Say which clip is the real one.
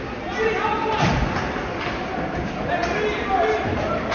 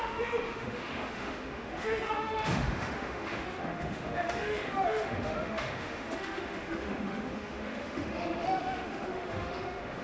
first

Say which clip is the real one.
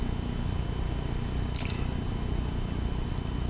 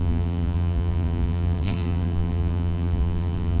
first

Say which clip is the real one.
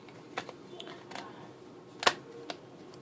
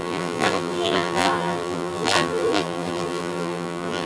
first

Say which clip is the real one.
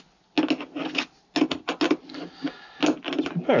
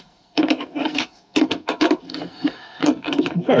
first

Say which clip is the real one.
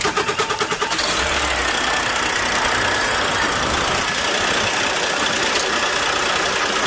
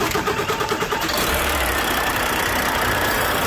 first